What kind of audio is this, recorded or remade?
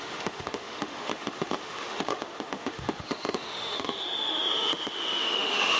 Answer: remade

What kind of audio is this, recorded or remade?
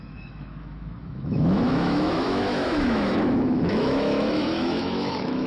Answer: remade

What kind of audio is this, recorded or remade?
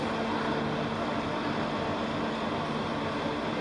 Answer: recorded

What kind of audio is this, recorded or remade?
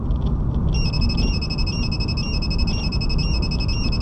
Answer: recorded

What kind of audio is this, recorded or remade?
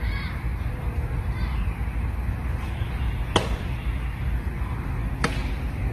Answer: recorded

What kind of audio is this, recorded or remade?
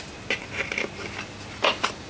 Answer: recorded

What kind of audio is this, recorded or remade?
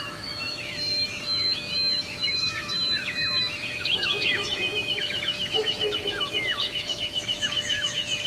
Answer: remade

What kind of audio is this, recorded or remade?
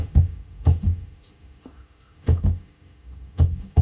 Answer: remade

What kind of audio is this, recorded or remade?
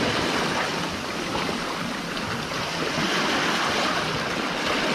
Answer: recorded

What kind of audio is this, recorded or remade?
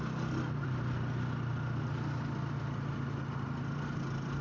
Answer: recorded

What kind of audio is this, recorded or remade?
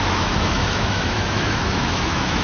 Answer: remade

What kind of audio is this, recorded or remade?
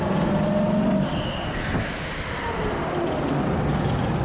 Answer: recorded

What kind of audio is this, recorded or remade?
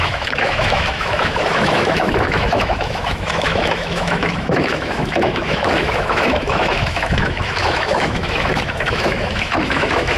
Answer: remade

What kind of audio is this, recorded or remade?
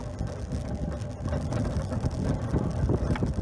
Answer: recorded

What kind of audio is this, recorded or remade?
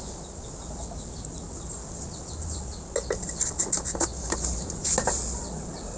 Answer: recorded